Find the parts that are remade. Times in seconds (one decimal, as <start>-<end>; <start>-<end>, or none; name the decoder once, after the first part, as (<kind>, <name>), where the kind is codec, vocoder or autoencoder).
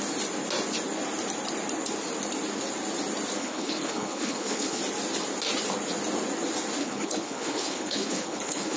3.4-4.8 (codec, HILCodec); 6.8-8.8